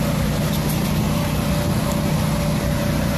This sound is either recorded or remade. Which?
recorded